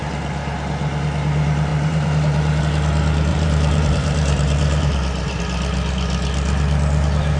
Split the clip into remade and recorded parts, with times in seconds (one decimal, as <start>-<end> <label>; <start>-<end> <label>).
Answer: 0.0-1.7 recorded; 1.7-2.6 remade; 2.6-3.3 recorded; 3.3-5.4 remade; 5.4-7.4 recorded